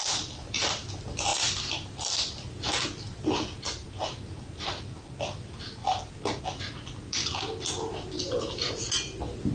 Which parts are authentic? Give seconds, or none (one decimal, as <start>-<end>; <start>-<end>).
0.0-9.5

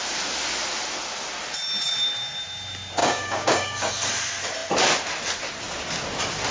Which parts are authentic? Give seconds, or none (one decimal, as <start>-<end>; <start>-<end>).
0.0-3.0; 3.9-6.5

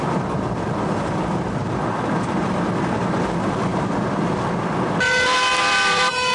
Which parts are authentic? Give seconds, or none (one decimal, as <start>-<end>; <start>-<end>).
3.7-5.0

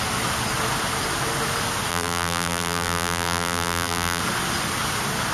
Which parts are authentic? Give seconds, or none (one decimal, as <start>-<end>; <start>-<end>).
0.0-1.9; 4.2-5.3

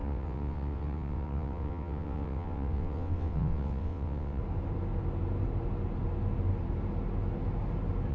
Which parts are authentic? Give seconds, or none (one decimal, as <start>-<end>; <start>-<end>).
4.4-8.1

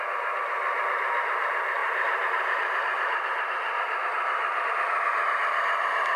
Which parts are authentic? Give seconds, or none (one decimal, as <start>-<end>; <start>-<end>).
0.0-1.8; 4.7-6.2